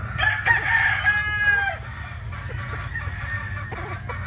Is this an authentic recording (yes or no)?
yes